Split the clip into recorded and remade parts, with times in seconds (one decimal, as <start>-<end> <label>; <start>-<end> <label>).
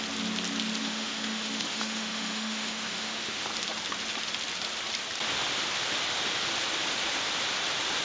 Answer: 0.0-0.8 recorded; 0.8-3.5 remade; 3.5-8.0 recorded